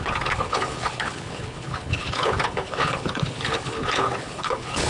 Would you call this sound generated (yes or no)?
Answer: yes